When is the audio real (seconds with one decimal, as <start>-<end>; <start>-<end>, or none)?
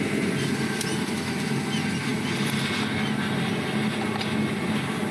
0.0-5.1